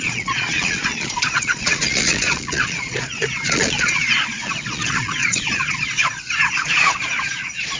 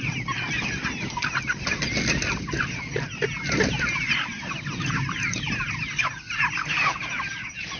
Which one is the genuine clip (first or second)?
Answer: second